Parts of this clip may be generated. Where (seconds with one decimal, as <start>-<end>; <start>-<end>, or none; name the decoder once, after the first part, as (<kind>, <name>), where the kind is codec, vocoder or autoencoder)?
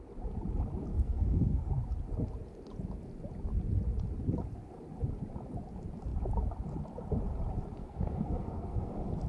0.9-1.7 (codec, SNAC); 7.8-8.9